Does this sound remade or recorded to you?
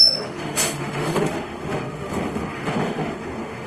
remade